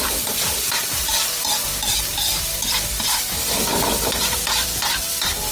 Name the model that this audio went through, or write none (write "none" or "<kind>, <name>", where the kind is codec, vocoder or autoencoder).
vocoder, BigVGAN v2